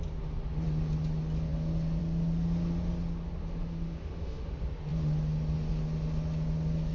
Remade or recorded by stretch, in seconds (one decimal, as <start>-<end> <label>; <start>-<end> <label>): 0.0-3.4 recorded; 3.4-4.5 remade; 4.5-6.9 recorded